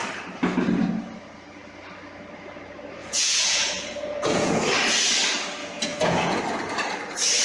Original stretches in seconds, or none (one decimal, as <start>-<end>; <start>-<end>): 0.0-3.0; 4.6-5.6; 6.4-7.4